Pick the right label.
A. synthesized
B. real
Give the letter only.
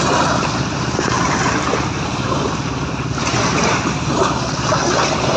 B